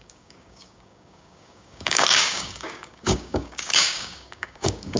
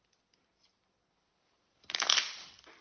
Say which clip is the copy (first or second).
first